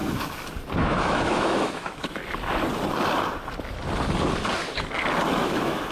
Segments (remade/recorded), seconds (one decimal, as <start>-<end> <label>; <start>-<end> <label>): 0.0-0.8 recorded; 0.8-2.2 remade; 2.2-5.3 recorded; 5.3-5.9 remade